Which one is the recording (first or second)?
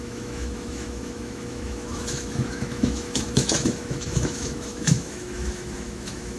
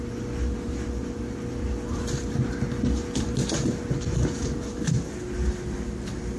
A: second